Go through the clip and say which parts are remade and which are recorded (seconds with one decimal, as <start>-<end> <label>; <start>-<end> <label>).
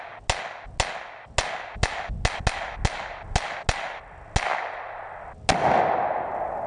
0.0-6.7 recorded